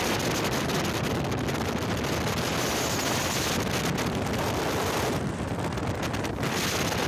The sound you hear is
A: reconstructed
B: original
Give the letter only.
B